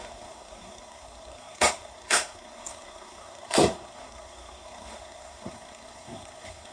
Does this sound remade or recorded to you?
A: remade